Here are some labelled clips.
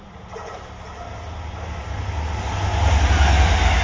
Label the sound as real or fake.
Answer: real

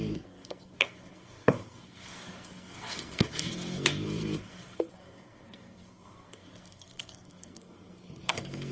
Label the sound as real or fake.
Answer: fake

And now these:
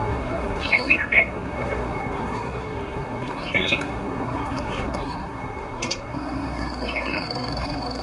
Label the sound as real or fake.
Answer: fake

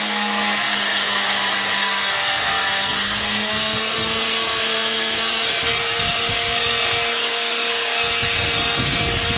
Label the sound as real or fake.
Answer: fake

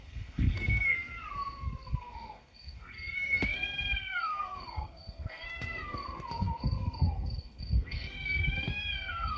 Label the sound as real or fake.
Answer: fake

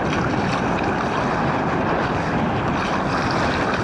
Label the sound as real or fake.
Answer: real